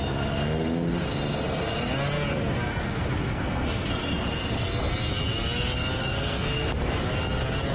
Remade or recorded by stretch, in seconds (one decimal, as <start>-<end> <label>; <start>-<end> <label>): 0.0-2.7 recorded; 2.7-3.9 remade; 3.9-6.0 recorded; 6.0-6.7 remade; 6.7-7.7 recorded